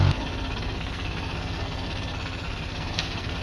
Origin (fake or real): fake